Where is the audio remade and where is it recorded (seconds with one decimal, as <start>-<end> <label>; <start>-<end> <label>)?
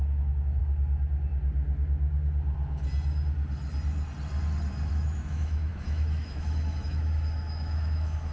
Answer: 0.0-0.6 remade; 0.6-4.9 recorded; 4.9-8.3 remade